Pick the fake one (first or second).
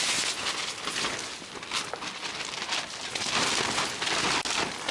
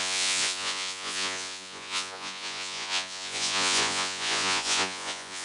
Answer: second